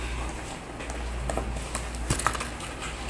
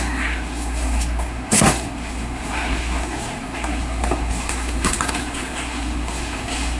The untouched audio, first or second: first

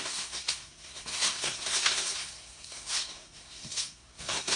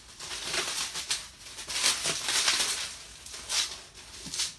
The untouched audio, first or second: second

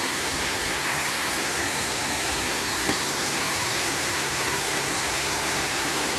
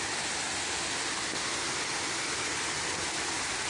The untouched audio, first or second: second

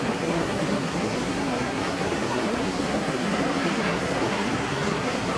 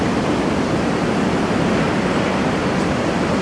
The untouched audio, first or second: second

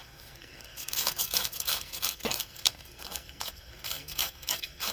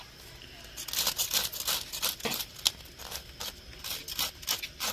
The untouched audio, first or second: second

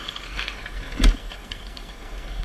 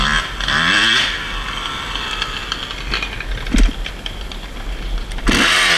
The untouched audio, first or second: second